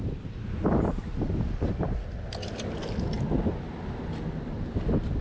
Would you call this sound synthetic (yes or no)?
no